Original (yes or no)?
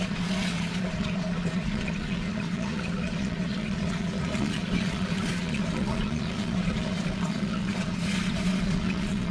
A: no